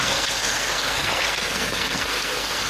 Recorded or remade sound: remade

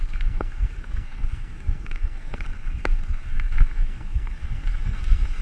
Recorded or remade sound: remade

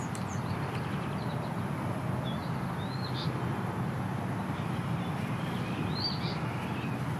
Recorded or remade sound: recorded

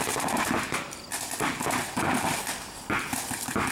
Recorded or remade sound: recorded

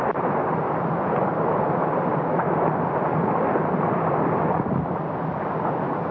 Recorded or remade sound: recorded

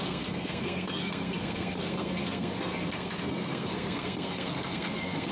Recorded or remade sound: remade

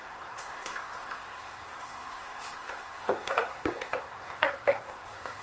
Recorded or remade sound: remade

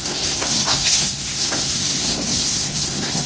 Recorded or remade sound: remade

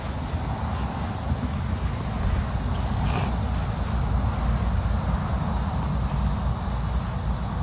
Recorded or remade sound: recorded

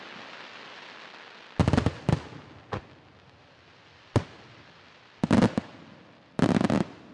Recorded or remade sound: recorded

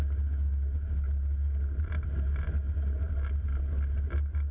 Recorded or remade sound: recorded